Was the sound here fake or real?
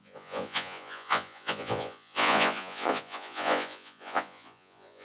fake